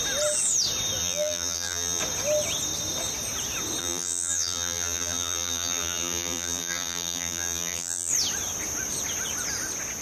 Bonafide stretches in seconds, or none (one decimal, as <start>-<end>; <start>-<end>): 0.0-1.0; 2.0-3.8; 8.1-10.0